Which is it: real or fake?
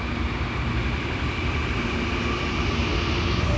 real